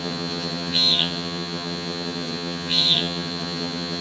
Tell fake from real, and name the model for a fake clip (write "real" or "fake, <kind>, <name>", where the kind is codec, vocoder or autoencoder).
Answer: fake, vocoder, HiFi-GAN